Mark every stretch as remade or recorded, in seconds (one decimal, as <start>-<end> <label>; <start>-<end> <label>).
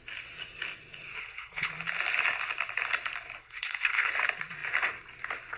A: 0.0-1.2 recorded; 1.2-1.7 remade; 1.7-3.4 recorded; 3.4-4.1 remade; 4.1-5.6 recorded